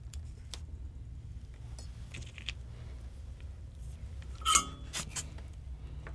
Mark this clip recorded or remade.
recorded